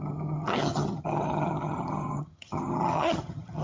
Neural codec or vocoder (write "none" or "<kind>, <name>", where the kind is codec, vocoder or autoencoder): vocoder, HiFi-GAN